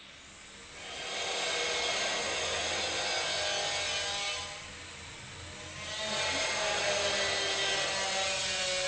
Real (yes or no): yes